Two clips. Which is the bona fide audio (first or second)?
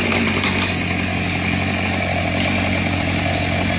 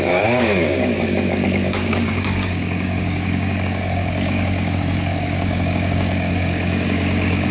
first